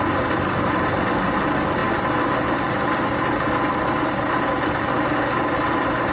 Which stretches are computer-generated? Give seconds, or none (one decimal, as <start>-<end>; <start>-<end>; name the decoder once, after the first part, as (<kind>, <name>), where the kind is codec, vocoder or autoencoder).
none